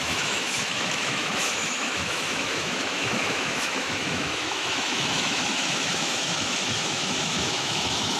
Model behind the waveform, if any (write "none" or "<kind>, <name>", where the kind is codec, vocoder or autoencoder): autoencoder, DAC-VAE